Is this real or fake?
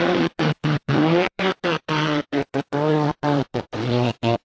fake